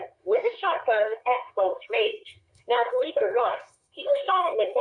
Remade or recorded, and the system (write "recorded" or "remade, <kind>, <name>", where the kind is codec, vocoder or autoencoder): remade, codec, SNAC